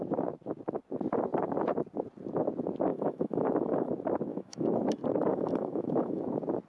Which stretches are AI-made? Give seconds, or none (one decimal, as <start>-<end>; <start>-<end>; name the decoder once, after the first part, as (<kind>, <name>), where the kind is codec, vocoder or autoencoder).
2.9-3.9 (autoencoder, DAC-VAE); 4.3-4.8; 5.3-6.2